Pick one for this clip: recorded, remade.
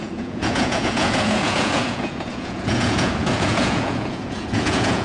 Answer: remade